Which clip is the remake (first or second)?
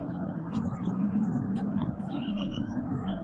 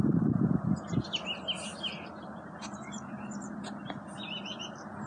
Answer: first